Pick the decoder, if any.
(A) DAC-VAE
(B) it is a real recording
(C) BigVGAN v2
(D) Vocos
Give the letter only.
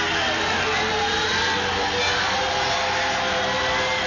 B